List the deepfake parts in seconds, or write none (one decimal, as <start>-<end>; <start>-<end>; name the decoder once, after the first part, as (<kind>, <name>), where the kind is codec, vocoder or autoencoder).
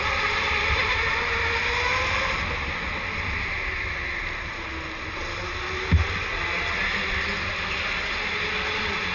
none